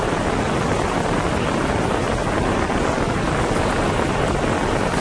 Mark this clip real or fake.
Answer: real